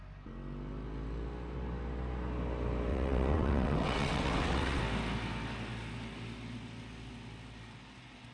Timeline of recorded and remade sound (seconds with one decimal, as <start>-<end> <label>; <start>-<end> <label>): 0.0-2.9 recorded; 2.9-4.8 remade; 4.8-8.3 recorded